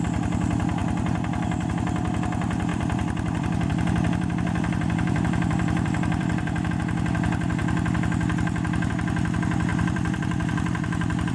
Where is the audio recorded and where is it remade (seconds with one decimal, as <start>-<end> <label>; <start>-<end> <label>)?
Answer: 0.0-2.7 recorded; 2.7-6.7 remade; 6.7-9.7 recorded; 9.7-11.3 remade